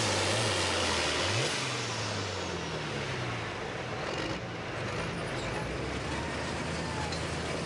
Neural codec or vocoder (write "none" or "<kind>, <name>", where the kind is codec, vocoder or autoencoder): none